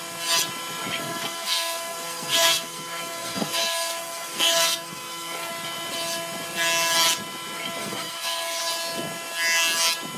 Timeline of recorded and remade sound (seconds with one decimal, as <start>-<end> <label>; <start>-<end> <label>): 0.0-1.0 recorded; 1.0-5.5 remade; 5.5-7.8 recorded; 7.8-8.6 remade; 8.6-10.2 recorded